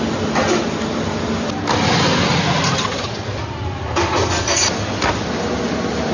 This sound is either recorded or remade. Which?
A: recorded